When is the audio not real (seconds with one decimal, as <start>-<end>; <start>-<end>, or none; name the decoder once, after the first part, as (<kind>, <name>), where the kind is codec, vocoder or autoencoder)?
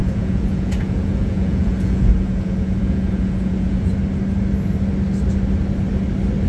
0.0-3.9 (vocoder, Vocos)